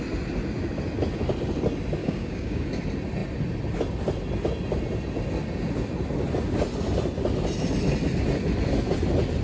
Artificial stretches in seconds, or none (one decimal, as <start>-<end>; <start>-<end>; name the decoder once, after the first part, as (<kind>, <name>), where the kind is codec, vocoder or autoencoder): 2.0-2.7 (codec, DAC)